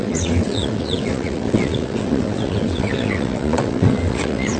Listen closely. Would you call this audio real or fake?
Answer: fake